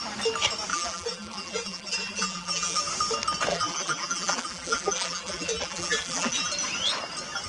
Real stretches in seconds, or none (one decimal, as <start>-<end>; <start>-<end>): 0.0-0.7; 2.8-3.5; 6.5-7.5